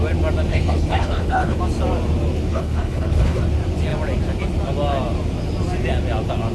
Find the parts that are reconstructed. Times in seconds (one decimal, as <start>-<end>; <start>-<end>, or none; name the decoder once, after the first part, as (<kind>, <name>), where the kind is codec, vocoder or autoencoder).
0.5-1.6 (codec, HILCodec); 2.5-3.4